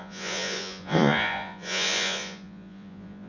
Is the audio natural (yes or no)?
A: no